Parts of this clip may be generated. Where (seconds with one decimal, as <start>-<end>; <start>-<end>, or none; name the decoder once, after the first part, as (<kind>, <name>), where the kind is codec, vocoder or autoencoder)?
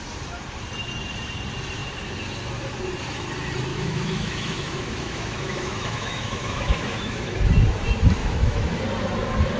3.7-7.4 (autoencoder, DAC-VAE); 8.2-8.8